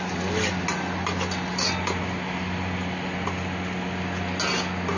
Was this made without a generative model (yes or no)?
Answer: yes